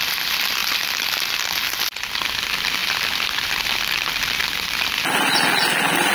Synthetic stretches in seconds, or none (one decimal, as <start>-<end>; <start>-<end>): 4.4-5.0